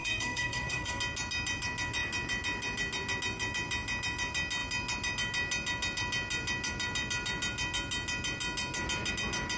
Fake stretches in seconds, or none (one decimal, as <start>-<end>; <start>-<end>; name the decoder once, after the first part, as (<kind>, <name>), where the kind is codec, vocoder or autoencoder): 0.0-1.0 (codec, SNAC)